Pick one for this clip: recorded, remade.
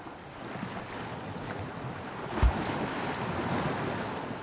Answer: recorded